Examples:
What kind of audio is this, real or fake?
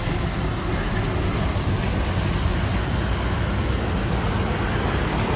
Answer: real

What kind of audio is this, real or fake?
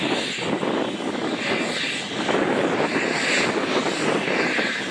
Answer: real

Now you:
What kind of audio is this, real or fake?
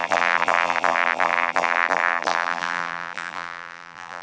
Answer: fake